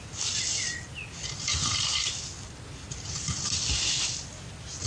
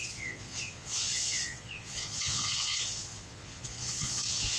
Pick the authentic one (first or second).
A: first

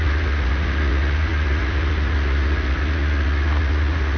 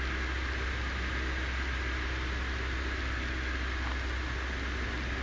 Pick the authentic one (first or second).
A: second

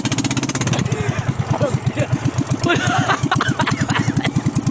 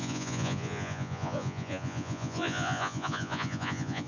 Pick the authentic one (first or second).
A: first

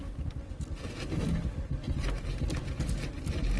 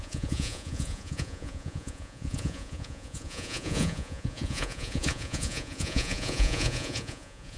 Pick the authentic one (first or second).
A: first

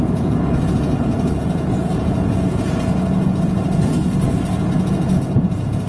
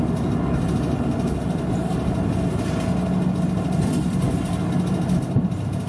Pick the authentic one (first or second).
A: second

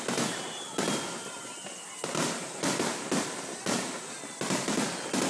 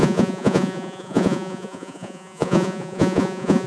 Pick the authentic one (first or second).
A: first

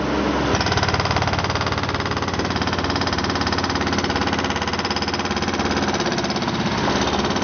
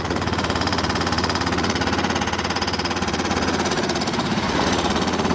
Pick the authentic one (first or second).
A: first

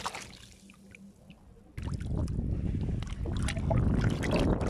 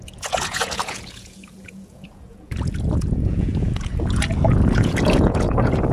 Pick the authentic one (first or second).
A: first